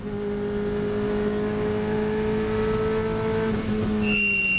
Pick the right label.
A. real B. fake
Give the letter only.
A